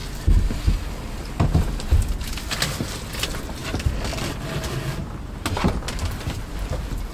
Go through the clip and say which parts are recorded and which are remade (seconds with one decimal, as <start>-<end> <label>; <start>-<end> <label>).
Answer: 0.0-3.6 recorded; 3.6-4.3 remade; 4.3-7.1 recorded